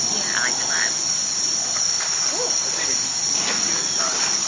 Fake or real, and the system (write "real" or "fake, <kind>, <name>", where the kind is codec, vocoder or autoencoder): real